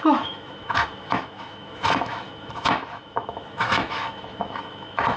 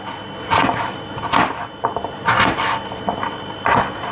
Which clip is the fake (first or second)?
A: first